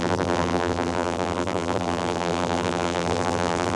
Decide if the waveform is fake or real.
fake